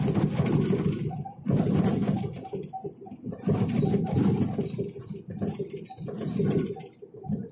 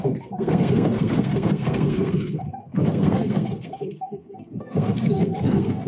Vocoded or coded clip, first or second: second